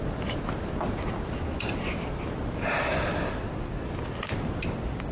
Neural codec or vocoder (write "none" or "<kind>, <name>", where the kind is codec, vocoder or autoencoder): none